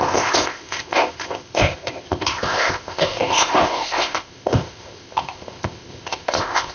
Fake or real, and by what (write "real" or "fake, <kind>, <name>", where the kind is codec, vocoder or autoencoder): fake, codec, ZipCodec